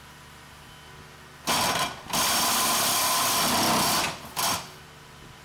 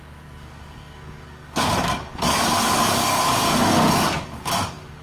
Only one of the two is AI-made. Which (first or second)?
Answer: second